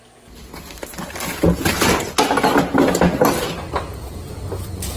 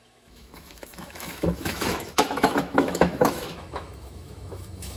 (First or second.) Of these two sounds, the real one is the first